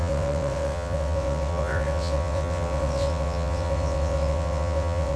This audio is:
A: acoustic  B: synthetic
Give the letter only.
B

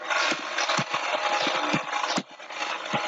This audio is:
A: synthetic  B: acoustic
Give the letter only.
B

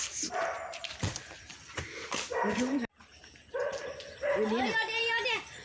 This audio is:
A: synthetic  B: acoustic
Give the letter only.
A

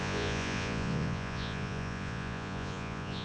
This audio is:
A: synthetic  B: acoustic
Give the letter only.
A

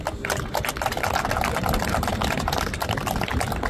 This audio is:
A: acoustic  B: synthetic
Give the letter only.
A